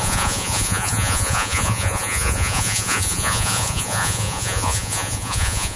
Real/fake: fake